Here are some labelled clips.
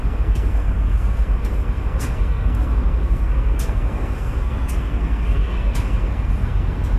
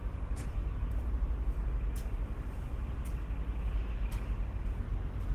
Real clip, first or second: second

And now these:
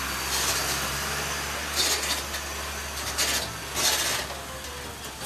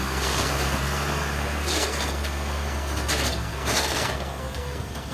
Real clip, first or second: first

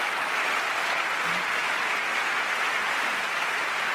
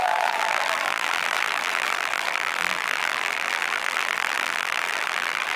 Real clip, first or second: first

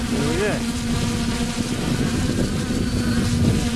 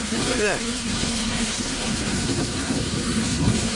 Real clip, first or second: first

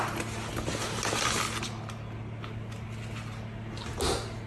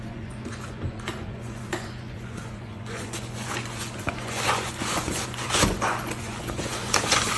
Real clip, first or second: first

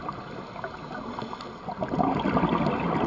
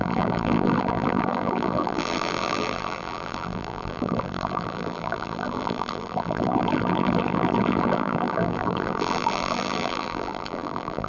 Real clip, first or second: first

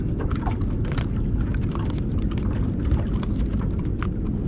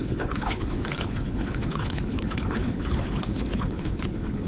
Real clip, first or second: first